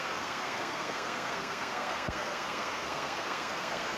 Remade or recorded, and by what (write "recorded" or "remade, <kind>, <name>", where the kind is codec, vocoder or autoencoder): remade, codec, SNAC